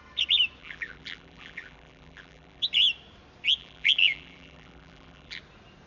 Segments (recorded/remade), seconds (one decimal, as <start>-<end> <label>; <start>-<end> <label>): 0.0-0.6 recorded; 0.6-2.6 remade; 2.6-3.6 recorded; 3.6-5.4 remade; 5.4-5.9 recorded